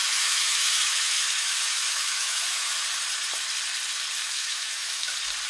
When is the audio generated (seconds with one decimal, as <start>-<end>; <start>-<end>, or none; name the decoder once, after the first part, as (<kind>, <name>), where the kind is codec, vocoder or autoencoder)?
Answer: 0.0-2.8 (autoencoder, DAC-VAE); 4.2-5.1

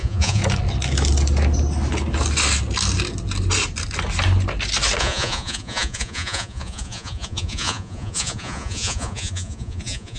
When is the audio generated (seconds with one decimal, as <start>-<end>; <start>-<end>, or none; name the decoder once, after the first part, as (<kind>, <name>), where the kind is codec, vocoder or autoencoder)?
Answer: 0.0-0.4 (vocoder, Vocos); 5.0-10.2

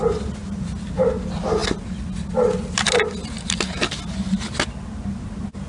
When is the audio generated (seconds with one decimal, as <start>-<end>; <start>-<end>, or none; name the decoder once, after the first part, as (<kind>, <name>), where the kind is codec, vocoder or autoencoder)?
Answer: none

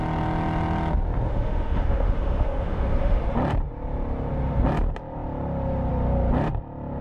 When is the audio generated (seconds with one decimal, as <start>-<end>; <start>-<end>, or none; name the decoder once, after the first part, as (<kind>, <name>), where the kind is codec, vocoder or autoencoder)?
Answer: 1.3-3.2 (autoencoder, DAC-VAE)

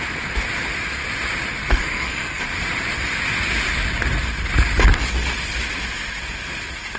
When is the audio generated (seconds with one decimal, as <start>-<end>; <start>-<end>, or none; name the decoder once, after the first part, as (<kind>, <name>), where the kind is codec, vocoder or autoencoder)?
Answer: 1.6-2.4 (codec, SNAC)

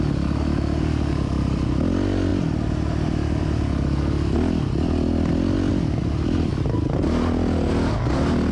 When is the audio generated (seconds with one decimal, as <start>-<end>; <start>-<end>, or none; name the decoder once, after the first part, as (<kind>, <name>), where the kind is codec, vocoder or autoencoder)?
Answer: none

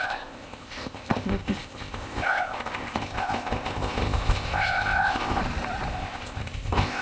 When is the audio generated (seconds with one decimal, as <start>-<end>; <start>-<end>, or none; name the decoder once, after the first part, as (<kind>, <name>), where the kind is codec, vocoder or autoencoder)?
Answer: 0.0-5.4 (codec, ZipCodec); 5.9-7.0